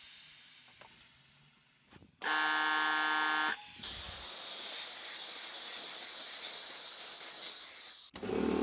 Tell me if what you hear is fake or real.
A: real